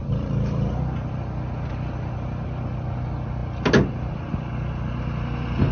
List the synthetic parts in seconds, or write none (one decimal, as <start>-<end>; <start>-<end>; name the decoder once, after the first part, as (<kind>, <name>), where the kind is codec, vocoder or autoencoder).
none